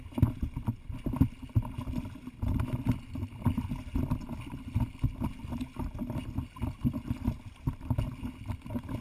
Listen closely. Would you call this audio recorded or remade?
recorded